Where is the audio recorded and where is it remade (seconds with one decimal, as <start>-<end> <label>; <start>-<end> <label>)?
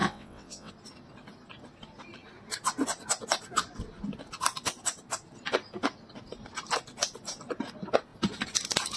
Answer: 0.0-0.7 remade; 0.7-9.0 recorded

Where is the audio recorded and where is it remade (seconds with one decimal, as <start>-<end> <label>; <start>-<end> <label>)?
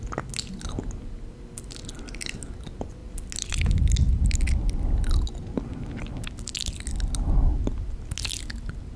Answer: 0.0-9.0 recorded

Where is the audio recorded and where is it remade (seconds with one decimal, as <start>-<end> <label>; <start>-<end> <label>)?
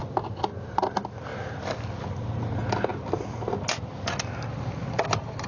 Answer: 0.0-5.5 recorded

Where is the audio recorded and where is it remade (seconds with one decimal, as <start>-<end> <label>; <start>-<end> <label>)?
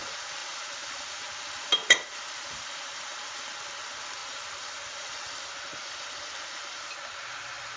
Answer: 0.0-0.4 recorded; 0.4-1.2 remade; 1.2-4.2 recorded; 4.2-5.3 remade; 5.3-7.8 recorded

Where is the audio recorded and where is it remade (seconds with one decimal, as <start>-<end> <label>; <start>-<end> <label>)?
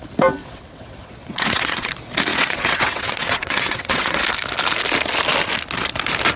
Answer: 0.0-0.4 recorded; 0.4-1.9 remade; 1.9-2.3 recorded; 2.3-4.2 remade; 4.2-6.4 recorded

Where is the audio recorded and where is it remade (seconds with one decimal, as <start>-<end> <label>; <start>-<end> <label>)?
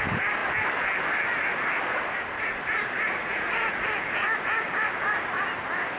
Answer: 0.0-3.2 recorded; 3.2-3.9 remade; 3.9-6.0 recorded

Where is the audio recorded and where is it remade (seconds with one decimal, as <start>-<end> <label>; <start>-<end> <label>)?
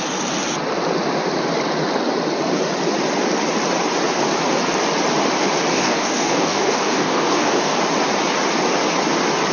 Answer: 0.0-5.7 recorded; 5.7-7.8 remade; 7.8-9.5 recorded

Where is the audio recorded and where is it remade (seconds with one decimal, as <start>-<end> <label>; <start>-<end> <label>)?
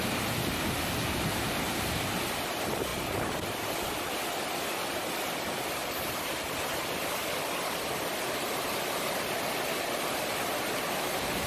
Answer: 0.0-2.9 recorded; 2.9-4.3 remade; 4.3-5.8 recorded; 5.8-6.4 remade; 6.4-11.5 recorded